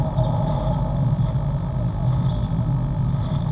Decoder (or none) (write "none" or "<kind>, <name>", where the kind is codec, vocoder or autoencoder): none